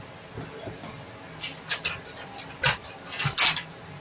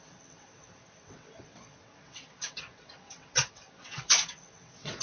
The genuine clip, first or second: first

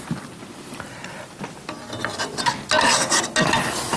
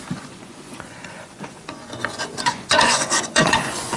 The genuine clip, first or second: first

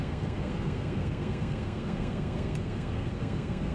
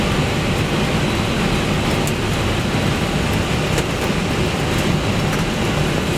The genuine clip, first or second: second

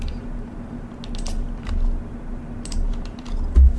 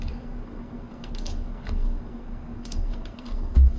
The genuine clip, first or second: first